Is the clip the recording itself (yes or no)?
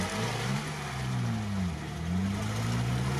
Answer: yes